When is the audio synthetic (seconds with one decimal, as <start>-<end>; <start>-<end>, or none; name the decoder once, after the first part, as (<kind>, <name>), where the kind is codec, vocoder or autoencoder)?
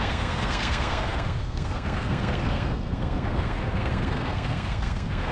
0.0-5.3 (codec, SNAC)